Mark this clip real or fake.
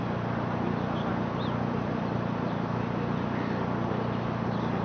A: real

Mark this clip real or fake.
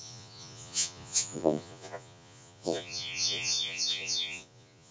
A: fake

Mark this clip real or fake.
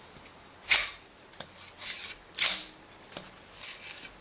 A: real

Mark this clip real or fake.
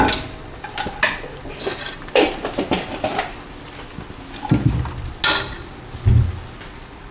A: real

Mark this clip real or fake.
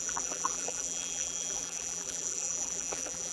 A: fake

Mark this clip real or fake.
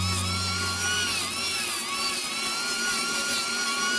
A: real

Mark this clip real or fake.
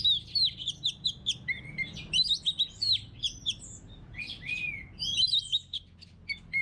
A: real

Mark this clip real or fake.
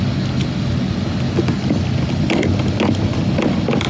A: real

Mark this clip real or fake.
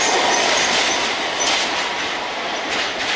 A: real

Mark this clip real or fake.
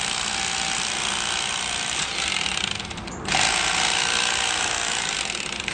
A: real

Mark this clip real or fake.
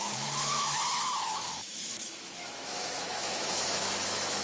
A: fake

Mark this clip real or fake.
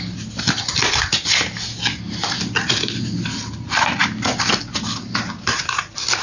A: real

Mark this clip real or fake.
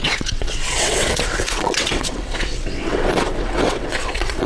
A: fake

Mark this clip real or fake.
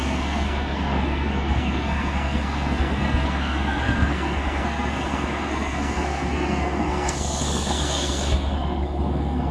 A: fake